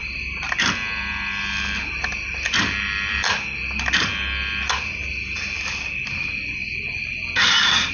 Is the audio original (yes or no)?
yes